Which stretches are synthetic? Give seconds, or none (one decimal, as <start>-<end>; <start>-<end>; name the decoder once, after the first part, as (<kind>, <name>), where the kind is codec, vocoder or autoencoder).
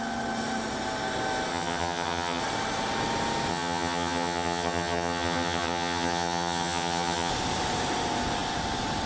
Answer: 1.5-2.4 (vocoder, HiFi-GAN); 3.5-7.3